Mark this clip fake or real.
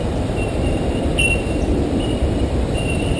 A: fake